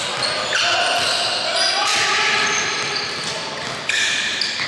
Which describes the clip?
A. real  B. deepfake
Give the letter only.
A